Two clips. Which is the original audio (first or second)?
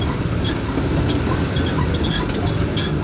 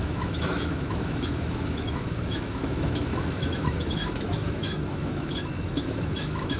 first